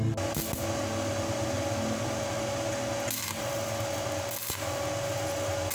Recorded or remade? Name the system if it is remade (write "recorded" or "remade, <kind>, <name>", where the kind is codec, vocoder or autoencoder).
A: recorded